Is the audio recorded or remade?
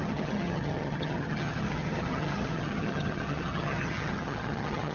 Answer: remade